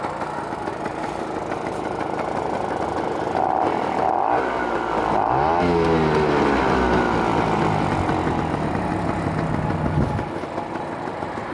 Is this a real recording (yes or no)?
yes